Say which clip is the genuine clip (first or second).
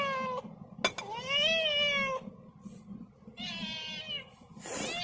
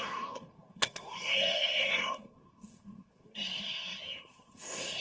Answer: first